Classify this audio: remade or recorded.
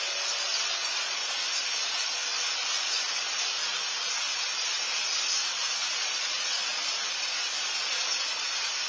recorded